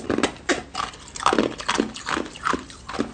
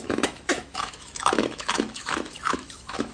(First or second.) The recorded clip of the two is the first